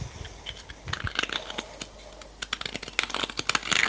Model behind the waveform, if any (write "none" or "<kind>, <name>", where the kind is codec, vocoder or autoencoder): none